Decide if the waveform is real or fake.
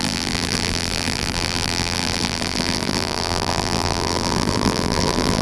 fake